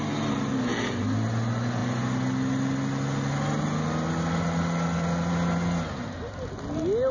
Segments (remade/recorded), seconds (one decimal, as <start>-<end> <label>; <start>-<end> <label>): 0.0-7.1 recorded